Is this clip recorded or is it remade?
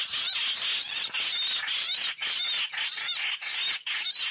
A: recorded